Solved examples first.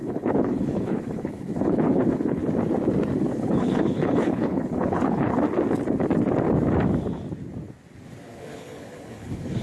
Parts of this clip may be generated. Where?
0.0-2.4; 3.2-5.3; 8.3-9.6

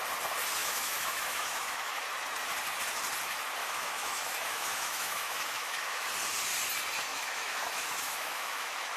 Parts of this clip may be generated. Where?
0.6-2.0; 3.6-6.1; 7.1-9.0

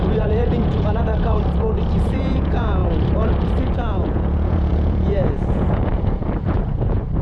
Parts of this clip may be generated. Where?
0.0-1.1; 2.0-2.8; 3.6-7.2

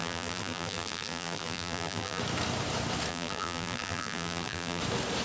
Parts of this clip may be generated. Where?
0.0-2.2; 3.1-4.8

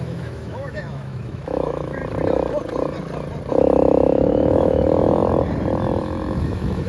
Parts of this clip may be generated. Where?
0.0-2.0; 3.5-5.2; 6.0-6.9

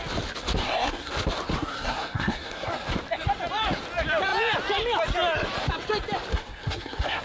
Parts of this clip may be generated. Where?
0.6-1.1; 1.6-2.7; 6.3-7.2